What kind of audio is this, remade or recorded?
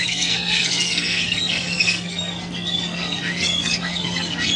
remade